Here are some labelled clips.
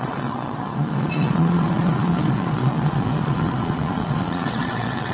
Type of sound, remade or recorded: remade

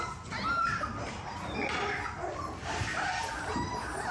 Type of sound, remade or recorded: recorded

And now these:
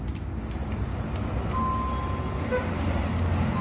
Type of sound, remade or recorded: recorded